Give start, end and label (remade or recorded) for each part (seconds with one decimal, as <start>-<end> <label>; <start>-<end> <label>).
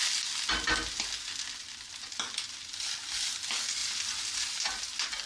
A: 0.0-5.3 recorded